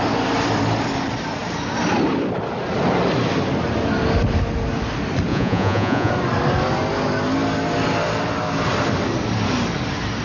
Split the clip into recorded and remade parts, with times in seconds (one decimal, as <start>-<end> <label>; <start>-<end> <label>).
0.0-5.3 recorded; 5.3-6.1 remade; 6.1-10.2 recorded